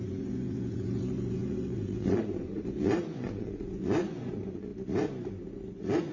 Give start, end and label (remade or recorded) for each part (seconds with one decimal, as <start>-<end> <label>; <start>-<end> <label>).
0.0-4.7 remade; 4.7-5.5 recorded; 5.5-6.1 remade